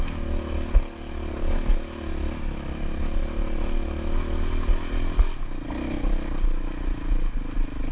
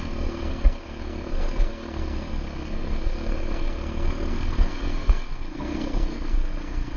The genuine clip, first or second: first